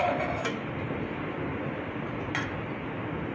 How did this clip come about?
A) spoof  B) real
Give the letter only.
B